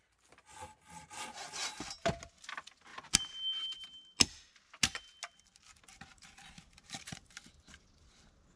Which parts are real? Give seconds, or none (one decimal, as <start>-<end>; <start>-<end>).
0.0-0.6; 1.1-6.1; 7.3-8.6